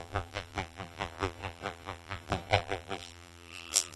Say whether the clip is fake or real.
fake